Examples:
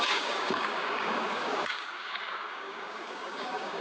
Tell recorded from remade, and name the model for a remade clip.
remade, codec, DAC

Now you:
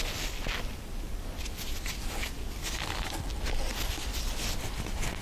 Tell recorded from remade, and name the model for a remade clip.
recorded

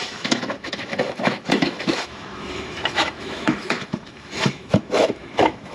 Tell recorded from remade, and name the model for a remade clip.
remade, autoencoder, DAC-VAE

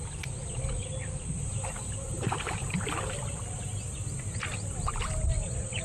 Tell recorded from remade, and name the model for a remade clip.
recorded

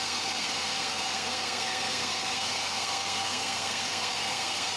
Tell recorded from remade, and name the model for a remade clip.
remade, codec, SNAC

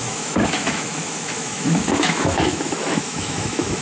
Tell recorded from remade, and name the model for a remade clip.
remade, autoencoder, DAC-VAE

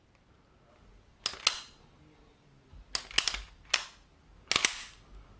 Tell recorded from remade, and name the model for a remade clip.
recorded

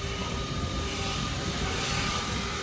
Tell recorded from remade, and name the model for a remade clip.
recorded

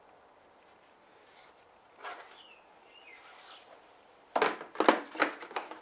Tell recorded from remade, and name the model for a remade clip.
recorded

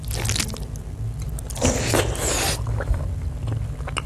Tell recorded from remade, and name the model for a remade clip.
recorded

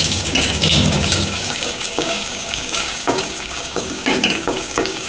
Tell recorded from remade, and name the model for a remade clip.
remade, codec, DAC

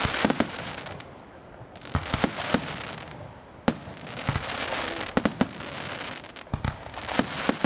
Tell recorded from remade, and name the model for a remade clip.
recorded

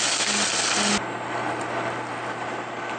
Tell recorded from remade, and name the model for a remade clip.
recorded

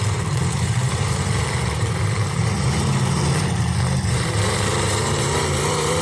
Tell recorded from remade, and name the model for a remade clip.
remade, vocoder, BigVGAN v2